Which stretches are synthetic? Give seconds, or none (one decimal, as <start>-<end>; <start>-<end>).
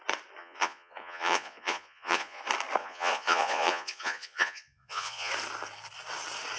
0.4-2.4; 2.8-5.3